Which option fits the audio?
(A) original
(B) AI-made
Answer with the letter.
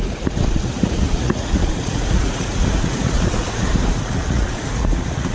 B